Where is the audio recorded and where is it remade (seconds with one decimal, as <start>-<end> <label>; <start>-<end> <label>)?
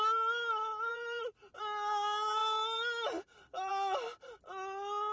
0.0-0.9 recorded; 0.9-1.6 remade; 1.6-5.1 recorded